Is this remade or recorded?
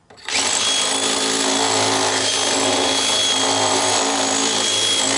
recorded